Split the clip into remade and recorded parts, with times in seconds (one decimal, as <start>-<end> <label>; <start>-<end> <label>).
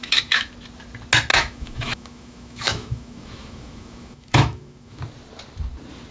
0.0-0.5 remade; 0.5-1.3 recorded; 1.3-5.0 remade; 5.0-6.1 recorded